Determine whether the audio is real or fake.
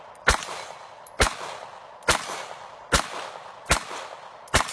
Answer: real